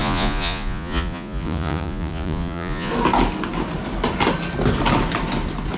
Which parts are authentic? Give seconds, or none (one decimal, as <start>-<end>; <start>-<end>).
2.9-5.8